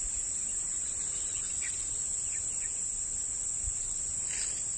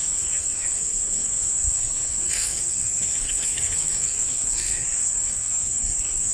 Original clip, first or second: first